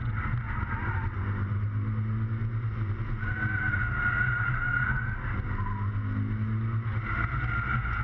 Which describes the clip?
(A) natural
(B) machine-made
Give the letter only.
A